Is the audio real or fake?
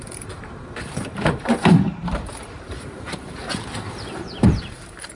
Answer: fake